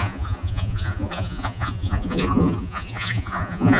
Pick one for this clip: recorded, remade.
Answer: remade